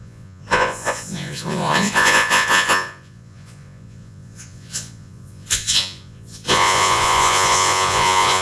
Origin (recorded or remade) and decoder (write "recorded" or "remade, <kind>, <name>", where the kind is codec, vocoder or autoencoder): remade, vocoder, Vocos